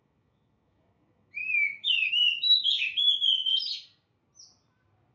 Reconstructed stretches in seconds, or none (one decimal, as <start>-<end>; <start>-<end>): 0.0-3.1